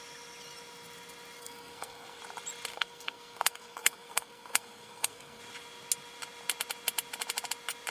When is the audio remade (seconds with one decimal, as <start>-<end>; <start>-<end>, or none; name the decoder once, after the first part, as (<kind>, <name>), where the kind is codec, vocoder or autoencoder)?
1.4-2.2 (codec, SNAC); 2.7-5.4